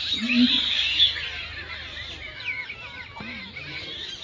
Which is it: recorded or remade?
recorded